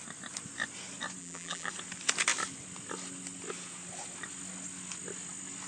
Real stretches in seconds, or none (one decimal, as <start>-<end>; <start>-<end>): 0.0-1.2; 1.7-5.7